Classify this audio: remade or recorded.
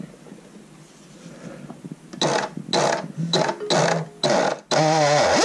recorded